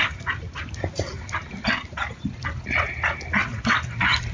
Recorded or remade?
recorded